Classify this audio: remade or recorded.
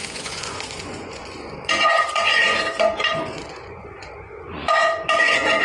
remade